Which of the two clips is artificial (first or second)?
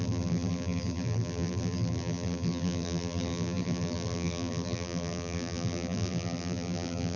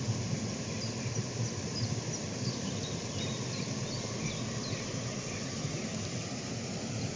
first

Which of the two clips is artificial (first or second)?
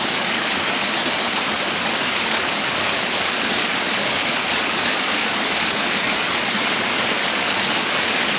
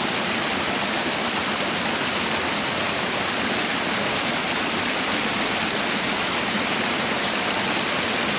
first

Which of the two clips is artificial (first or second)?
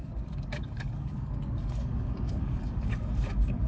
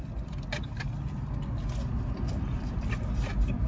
first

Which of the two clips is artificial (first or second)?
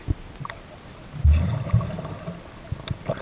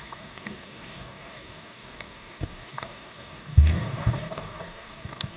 second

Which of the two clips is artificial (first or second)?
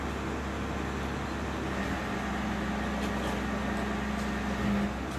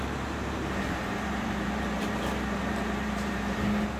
second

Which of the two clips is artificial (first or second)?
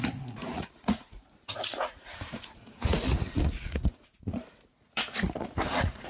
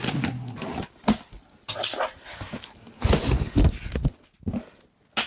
first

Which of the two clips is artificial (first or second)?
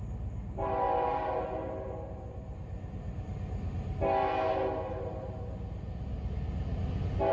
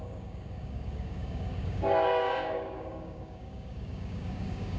second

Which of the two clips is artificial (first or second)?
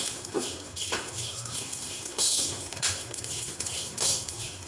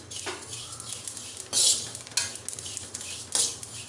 first